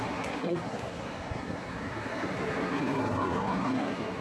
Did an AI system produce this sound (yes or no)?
yes